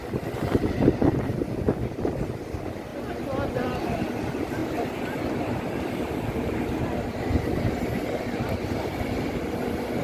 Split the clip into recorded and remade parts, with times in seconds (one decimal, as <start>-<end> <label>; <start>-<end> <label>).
0.0-10.0 recorded